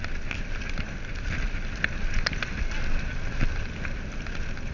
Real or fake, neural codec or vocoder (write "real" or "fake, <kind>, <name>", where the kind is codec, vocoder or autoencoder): real